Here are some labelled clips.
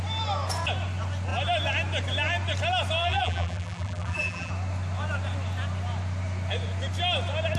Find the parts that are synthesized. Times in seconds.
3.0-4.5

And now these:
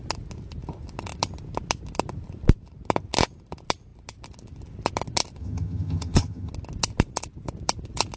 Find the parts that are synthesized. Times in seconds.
5.4-6.5

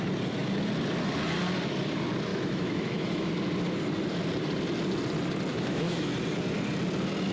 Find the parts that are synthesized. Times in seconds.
2.3-3.3; 5.5-6.1

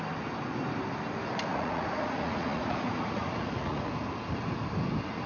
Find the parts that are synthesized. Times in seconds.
1.5-3.9